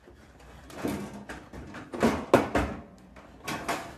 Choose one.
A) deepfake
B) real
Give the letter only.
B